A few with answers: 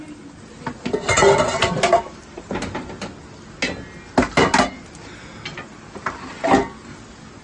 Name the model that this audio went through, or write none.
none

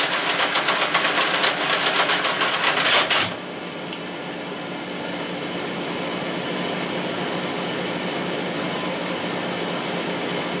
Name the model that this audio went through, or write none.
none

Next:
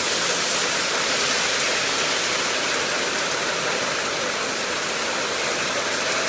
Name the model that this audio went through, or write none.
none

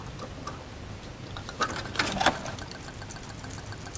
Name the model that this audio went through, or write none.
none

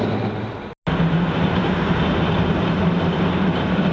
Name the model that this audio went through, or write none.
none